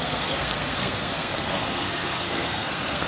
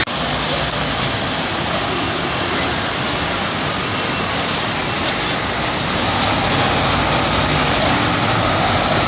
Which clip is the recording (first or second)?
second